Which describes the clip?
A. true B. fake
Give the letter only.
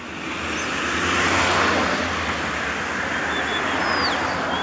A